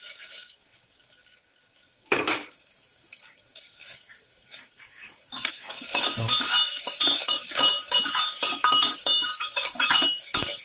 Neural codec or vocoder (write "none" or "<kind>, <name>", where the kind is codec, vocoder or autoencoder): codec, DAC